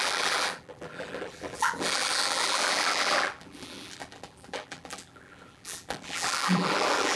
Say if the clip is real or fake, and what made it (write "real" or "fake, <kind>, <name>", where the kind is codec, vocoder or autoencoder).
fake, vocoder, BigVGAN v2